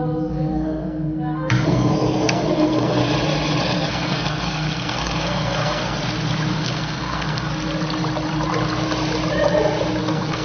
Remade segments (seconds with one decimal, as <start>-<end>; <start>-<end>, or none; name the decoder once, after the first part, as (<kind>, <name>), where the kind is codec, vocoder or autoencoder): 0.0-3.0 (codec, SNAC); 3.6-6.0; 6.6-7.5; 10.0-10.4